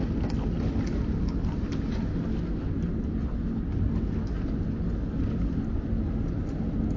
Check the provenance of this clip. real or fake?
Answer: real